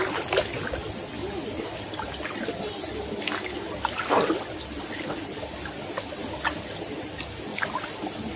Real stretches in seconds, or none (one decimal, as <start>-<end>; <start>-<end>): 0.0-7.5